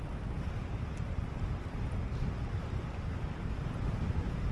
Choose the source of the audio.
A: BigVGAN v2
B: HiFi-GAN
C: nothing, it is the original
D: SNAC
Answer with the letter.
C